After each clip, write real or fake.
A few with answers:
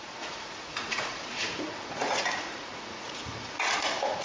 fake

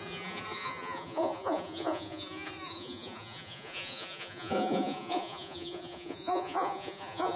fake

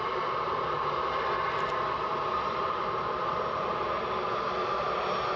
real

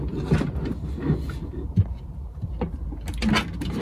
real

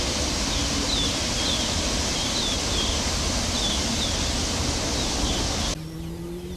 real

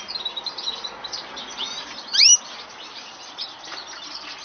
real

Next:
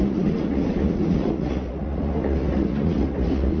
fake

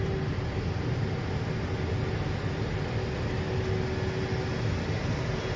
real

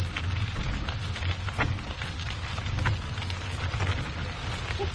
real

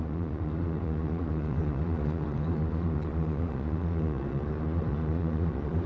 fake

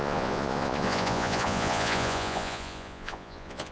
fake